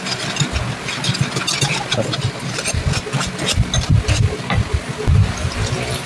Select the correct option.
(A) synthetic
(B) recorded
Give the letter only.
B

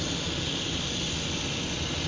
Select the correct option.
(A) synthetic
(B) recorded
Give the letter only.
B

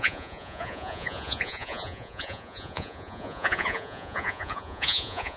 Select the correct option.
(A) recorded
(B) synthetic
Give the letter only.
B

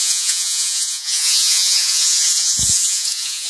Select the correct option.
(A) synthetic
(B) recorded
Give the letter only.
A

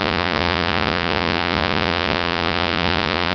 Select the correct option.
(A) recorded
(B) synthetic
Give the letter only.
B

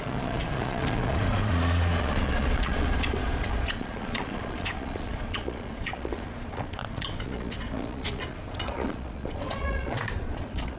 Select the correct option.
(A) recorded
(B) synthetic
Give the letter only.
B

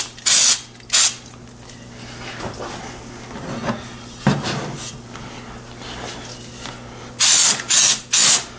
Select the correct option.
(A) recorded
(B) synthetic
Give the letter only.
A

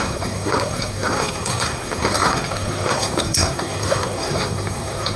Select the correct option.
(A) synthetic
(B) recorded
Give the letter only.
A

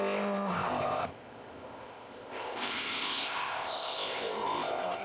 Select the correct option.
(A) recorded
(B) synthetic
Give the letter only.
B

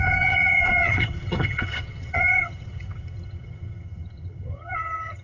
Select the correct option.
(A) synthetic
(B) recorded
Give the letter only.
A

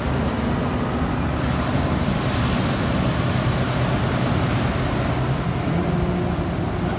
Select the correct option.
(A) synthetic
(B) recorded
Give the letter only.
B